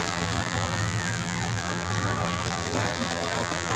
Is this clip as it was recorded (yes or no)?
no